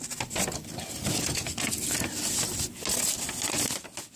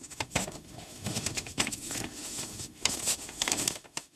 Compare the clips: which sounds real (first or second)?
first